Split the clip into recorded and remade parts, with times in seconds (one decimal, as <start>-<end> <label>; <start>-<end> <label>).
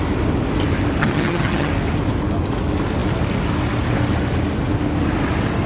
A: 0.0-1.0 recorded; 1.0-1.7 remade; 1.7-5.7 recorded